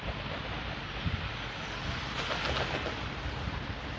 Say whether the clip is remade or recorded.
recorded